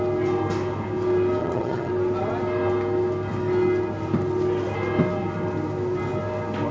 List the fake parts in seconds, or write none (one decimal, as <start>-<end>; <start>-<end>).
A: 1.4-1.9